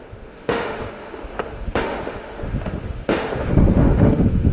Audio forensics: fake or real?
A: fake